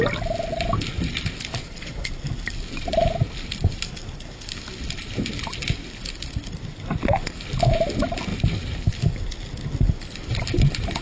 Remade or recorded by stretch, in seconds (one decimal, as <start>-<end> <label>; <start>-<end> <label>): 0.0-1.6 recorded; 1.6-2.1 remade; 2.1-11.0 recorded